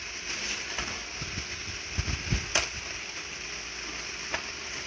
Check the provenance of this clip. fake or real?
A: real